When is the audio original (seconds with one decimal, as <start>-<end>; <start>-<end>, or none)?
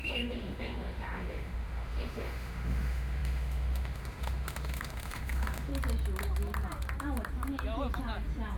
5.7-8.6